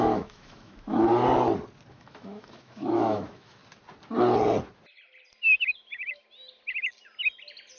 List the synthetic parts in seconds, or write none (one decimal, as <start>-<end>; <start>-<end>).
0.0-1.1; 1.9-3.6